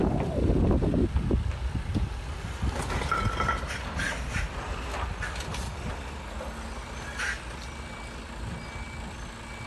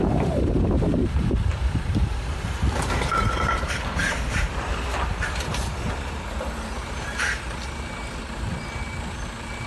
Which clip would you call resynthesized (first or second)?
second